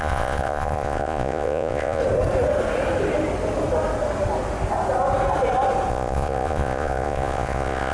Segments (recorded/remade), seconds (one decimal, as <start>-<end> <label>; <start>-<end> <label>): 0.0-2.0 remade; 2.0-5.9 recorded; 5.9-7.9 remade